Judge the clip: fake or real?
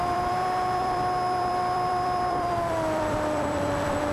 fake